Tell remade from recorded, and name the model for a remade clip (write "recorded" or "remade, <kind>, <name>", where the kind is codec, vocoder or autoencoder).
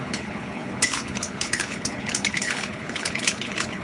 remade, codec, HILCodec